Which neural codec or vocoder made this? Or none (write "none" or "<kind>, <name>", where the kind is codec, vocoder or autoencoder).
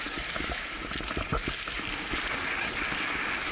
none